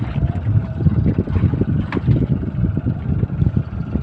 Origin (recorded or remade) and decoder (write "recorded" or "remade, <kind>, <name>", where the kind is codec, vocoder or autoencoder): recorded